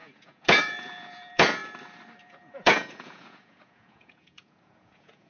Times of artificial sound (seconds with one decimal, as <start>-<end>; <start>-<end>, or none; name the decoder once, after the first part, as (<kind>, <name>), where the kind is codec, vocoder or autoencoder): 0.0-1.6 (vocoder, Vocos); 2.2-5.3